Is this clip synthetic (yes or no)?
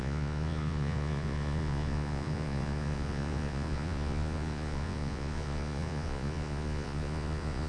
yes